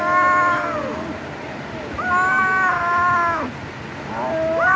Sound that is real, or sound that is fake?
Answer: real